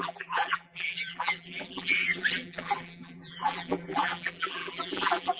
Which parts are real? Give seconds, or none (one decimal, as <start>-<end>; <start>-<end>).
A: none

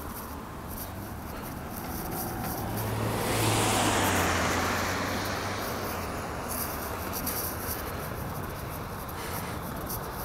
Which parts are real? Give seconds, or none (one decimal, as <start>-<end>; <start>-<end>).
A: 0.0-10.2